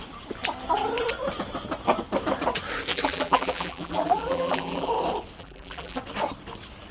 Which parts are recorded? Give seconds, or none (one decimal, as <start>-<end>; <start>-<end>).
0.0-2.9; 4.9-5.4; 6.0-6.9